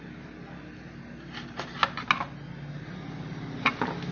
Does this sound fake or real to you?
real